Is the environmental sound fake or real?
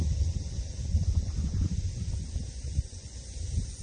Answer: fake